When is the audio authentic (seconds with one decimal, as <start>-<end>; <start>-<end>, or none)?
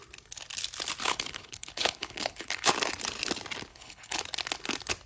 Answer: 0.0-1.0; 2.7-3.7; 4.2-5.1